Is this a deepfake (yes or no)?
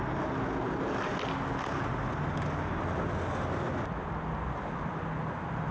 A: no